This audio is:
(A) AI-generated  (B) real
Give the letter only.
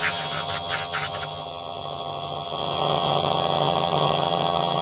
A